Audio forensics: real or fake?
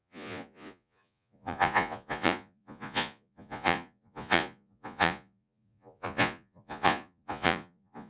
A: fake